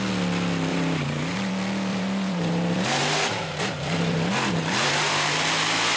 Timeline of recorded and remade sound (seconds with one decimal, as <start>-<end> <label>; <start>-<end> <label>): 0.0-0.7 recorded; 0.7-1.5 remade; 1.5-1.9 recorded; 1.9-5.5 remade; 5.5-6.0 recorded